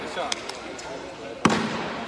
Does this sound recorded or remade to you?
remade